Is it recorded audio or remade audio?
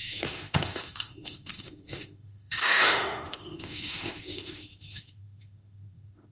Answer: remade